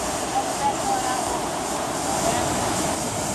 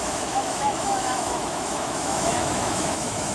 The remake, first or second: second